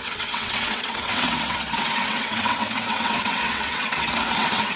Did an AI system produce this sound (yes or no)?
yes